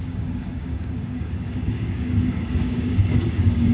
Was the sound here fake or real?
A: fake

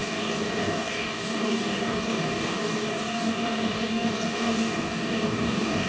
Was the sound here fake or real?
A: fake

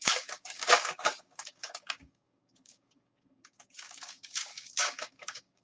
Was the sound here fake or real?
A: fake